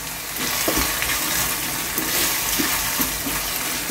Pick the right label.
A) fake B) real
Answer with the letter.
B